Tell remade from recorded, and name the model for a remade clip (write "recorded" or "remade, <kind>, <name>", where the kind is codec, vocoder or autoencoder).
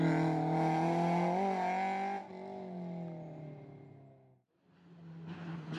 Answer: recorded